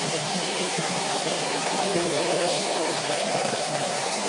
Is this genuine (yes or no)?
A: no